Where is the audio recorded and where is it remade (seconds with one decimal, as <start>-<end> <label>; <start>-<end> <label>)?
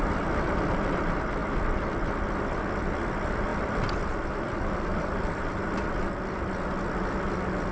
0.0-3.5 recorded; 3.5-7.7 remade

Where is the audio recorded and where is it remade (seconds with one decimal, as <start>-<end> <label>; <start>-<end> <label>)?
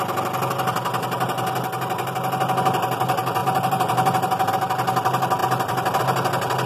0.0-3.4 recorded; 3.4-4.5 remade; 4.5-5.4 recorded; 5.4-6.0 remade; 6.0-6.7 recorded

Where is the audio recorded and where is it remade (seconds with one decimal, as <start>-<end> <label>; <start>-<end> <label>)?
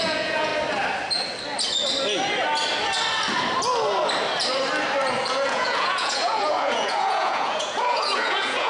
0.0-0.5 remade; 0.5-5.3 recorded; 5.3-8.7 remade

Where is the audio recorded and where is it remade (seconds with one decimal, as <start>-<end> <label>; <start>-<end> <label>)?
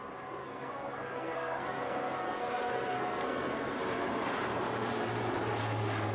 0.0-0.4 recorded; 0.4-3.8 remade; 3.8-6.1 recorded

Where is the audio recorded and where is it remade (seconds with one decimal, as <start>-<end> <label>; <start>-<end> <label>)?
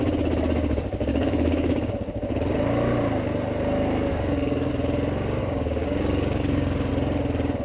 0.0-0.6 recorded; 0.6-1.9 remade; 1.9-4.1 recorded; 4.1-4.7 remade; 4.7-5.4 recorded; 5.4-6.9 remade; 6.9-7.6 recorded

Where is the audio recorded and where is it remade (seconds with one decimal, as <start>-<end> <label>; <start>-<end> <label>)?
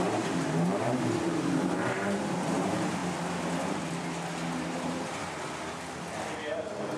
0.0-3.0 remade; 3.0-4.6 recorded; 4.6-5.2 remade; 5.2-5.9 recorded; 5.9-7.0 remade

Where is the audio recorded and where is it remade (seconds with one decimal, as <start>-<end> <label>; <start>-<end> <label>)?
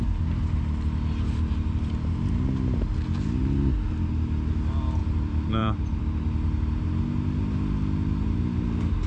0.0-5.0 recorded; 5.0-6.0 remade; 6.0-9.1 recorded